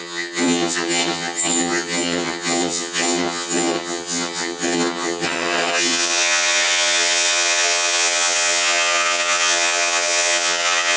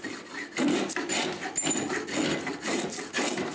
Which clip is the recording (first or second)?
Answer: second